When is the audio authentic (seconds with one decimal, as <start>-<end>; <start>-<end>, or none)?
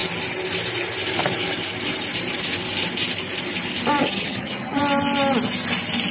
0.0-4.0; 4.8-6.1